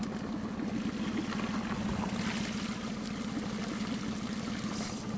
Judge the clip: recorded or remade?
recorded